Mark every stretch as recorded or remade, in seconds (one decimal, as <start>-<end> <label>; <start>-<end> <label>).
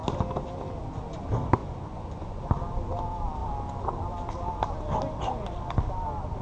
0.0-1.6 recorded; 1.6-2.4 remade; 2.4-6.4 recorded